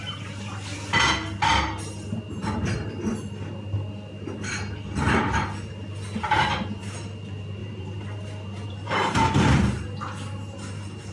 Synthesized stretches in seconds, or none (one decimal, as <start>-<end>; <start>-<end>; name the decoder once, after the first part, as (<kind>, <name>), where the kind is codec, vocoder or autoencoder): 7.6-9.5 (vocoder, BigVGAN v2)